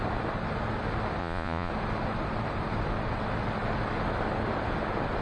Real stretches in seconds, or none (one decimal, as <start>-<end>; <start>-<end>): 0.0-1.2; 1.7-5.2

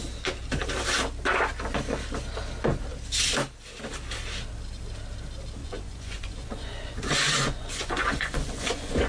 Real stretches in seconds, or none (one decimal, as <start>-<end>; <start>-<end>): 0.0-5.6

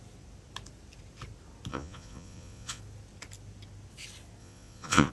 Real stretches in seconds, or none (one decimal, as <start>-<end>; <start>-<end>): 0.0-1.7; 2.8-4.4

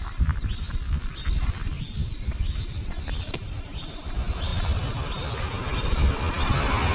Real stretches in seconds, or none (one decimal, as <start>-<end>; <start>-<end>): 0.0-6.9

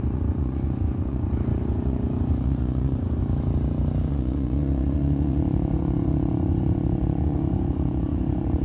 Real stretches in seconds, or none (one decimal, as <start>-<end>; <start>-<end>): 3.2-4.1